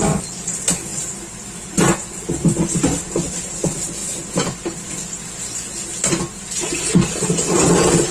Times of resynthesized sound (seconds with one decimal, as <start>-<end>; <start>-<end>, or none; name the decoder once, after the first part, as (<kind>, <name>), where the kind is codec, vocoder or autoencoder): none